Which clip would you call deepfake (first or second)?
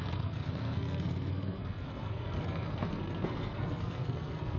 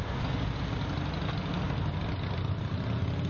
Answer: first